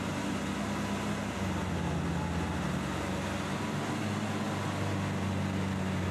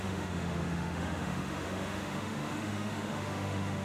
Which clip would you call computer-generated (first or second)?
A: second